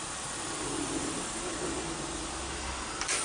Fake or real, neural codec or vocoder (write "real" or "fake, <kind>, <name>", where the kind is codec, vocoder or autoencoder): real